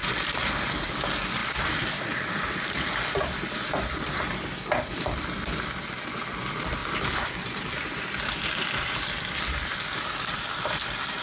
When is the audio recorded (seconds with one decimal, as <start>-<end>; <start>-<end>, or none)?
0.0-1.4; 2.4-6.8; 10.5-11.2